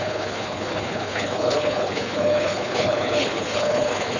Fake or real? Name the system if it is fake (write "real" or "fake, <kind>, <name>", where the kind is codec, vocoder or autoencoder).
fake, codec, HILCodec